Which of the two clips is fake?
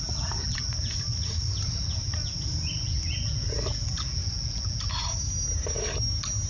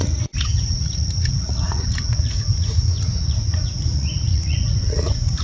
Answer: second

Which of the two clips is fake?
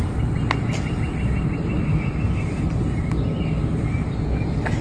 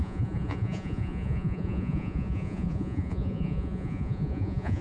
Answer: second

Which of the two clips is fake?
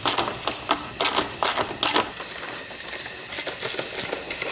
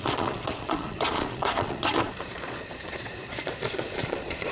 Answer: second